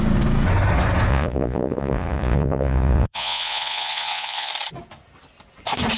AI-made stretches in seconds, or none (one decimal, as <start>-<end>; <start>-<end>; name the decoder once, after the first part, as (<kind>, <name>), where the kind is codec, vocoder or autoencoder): 1.1-4.5 (vocoder, Vocos)